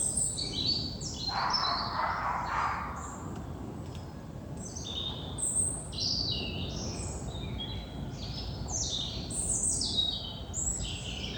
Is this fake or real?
real